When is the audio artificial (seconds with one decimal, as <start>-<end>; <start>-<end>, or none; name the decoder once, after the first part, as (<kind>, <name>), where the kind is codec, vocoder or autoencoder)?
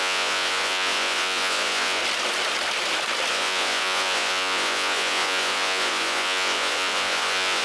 0.0-2.0 (vocoder, Vocos); 3.3-7.6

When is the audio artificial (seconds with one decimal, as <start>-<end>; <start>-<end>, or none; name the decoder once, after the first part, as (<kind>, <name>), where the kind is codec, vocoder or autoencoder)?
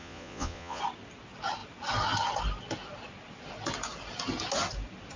0.0-0.8 (vocoder, Vocos)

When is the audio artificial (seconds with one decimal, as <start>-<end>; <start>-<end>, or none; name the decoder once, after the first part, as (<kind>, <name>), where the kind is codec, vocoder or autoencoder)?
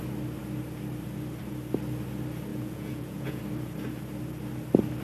2.5-3.4 (vocoder, Vocos)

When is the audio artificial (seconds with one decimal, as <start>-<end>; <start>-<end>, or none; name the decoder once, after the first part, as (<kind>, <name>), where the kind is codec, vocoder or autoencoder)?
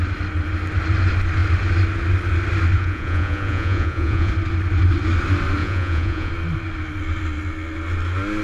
2.8-4.3 (vocoder, Vocos); 5.6-6.3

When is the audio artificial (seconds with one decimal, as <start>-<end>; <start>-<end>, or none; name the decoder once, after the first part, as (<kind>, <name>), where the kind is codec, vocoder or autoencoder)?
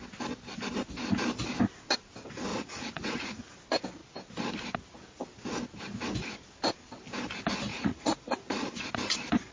2.5-3.4 (vocoder, Vocos); 7.7-8.9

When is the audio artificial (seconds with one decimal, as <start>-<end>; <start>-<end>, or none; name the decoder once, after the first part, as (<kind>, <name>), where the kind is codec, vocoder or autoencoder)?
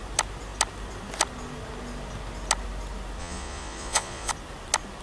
3.2-4.3 (vocoder, Vocos)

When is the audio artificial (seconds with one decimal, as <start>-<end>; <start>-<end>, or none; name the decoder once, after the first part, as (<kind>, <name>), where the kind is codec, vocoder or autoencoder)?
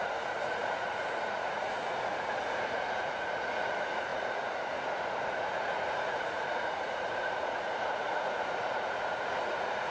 0.0-9.9 (vocoder, Vocos)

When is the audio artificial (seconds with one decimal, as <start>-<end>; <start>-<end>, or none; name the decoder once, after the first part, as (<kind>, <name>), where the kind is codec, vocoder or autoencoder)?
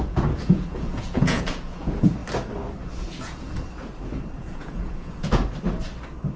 0.0-2.2 (vocoder, Vocos); 3.0-3.5; 4.4-5.4